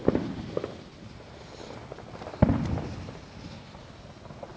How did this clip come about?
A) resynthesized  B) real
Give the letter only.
B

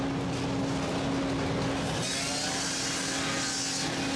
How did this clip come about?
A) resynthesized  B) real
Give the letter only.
B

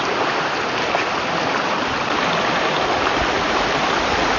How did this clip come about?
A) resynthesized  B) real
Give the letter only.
B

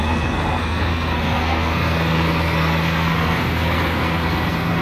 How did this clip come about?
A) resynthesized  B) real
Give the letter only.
A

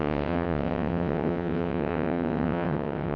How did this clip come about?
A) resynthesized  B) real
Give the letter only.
A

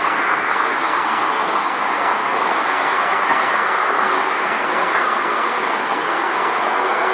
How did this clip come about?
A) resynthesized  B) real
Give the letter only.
A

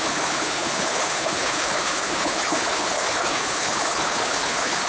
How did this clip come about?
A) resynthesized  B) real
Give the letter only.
A